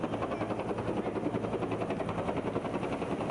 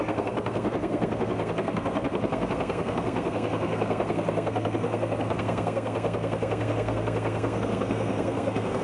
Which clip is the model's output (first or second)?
second